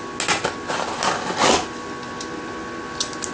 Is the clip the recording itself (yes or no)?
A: yes